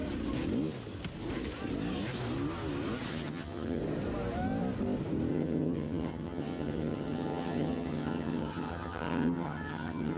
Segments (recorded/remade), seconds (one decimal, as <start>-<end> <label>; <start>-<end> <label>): 0.0-3.1 recorded; 3.1-3.8 remade; 3.8-5.3 recorded; 5.3-10.2 remade